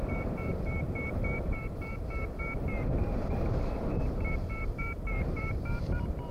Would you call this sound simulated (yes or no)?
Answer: yes